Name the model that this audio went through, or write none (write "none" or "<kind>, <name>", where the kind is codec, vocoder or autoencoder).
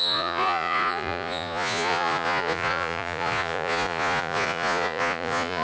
vocoder, Vocos